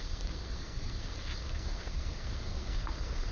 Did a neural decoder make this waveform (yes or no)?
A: yes